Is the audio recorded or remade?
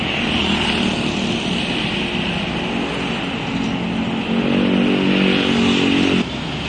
recorded